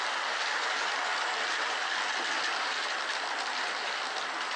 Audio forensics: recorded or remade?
recorded